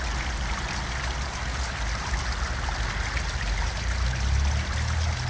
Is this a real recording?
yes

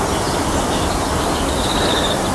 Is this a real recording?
yes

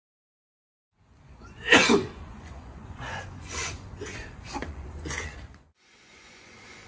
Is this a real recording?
no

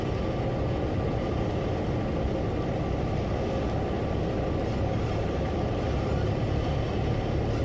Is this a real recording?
yes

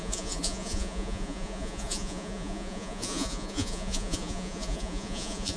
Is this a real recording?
no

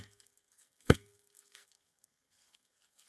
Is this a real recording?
no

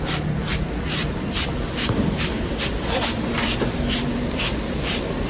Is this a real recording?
no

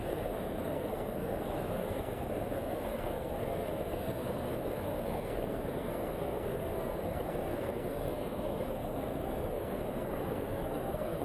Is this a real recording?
no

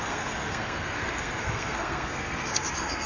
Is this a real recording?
no